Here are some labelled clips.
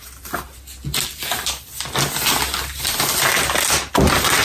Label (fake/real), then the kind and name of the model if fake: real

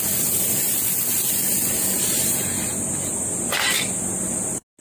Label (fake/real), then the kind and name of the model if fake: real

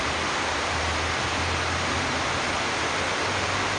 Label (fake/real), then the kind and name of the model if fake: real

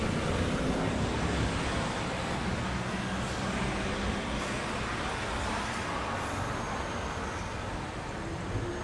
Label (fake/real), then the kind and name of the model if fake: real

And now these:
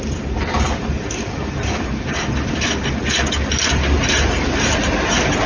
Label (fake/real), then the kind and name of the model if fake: fake, vocoder, BigVGAN v2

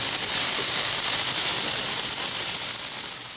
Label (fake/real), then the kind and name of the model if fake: fake, vocoder, BigVGAN v2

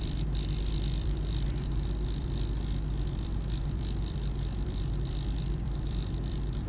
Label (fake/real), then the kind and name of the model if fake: fake, vocoder, BigVGAN v2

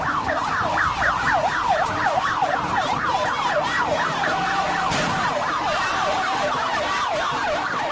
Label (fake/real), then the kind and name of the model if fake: fake, vocoder, BigVGAN v2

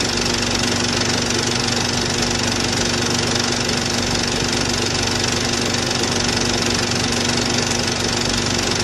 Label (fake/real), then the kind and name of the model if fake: real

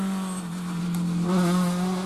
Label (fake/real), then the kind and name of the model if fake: real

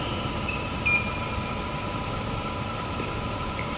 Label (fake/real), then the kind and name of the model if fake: fake, vocoder, BigVGAN v2